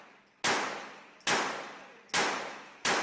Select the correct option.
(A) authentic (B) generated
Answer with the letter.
A